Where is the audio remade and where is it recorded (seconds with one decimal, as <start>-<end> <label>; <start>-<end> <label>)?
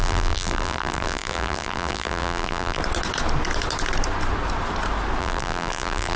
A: 0.0-2.8 remade; 2.8-5.2 recorded; 5.2-6.2 remade